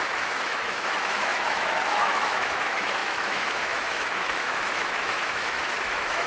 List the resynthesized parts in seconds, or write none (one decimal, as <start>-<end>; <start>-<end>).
0.0-6.3